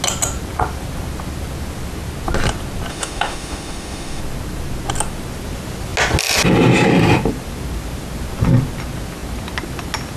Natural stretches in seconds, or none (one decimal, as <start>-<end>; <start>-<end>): 0.0-2.9; 4.2-10.2